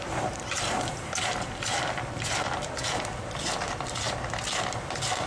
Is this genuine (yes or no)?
no